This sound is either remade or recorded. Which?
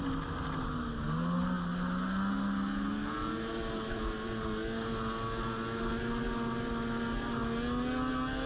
recorded